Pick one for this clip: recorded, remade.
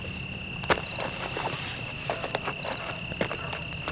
recorded